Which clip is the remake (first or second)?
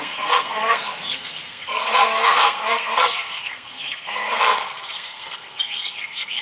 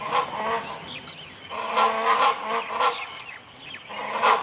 first